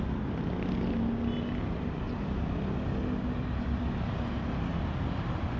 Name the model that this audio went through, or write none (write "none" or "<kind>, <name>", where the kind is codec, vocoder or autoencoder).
none